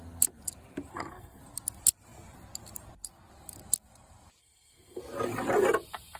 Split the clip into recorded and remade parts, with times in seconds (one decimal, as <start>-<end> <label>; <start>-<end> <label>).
0.0-0.9 recorded; 0.9-1.4 remade; 1.4-4.4 recorded; 4.4-5.0 remade; 5.0-6.2 recorded